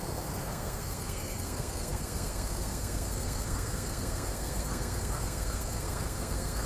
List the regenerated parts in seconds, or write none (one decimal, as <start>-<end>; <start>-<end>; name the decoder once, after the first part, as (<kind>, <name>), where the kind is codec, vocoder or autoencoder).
0.0-6.7 (codec, SNAC)